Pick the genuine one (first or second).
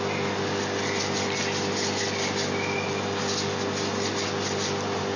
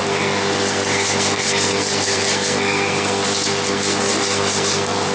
first